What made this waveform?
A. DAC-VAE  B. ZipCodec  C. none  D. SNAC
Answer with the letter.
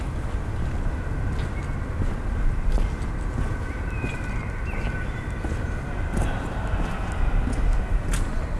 C